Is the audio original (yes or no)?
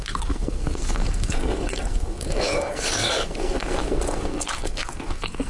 no